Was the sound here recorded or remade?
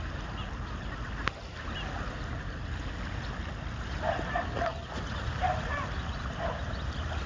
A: recorded